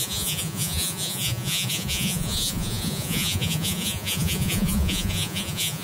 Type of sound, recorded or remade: remade